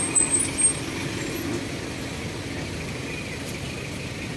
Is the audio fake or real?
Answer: real